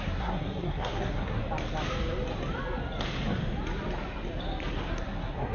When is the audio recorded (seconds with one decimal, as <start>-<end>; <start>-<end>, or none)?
1.4-4.7

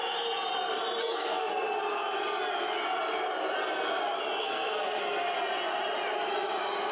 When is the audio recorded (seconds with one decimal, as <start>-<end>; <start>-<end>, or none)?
0.0-1.0; 1.5-4.4; 5.0-6.9

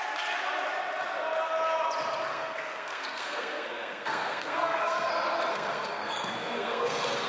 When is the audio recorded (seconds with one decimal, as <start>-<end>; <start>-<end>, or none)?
0.0-2.3; 5.1-5.5

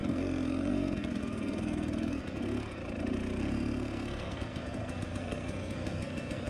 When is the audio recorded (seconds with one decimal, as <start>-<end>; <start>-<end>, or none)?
2.8-3.4